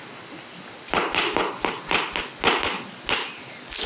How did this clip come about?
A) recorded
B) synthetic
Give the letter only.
A